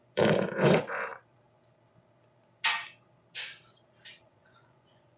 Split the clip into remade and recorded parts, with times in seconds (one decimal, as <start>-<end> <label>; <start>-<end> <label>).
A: 0.0-1.1 remade; 1.1-4.2 recorded; 4.2-5.2 remade